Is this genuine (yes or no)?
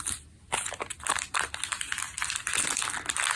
yes